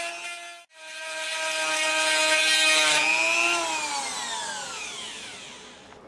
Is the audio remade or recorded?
recorded